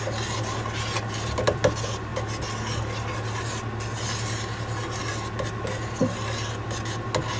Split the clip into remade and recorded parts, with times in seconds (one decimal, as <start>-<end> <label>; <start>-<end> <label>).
0.0-7.4 recorded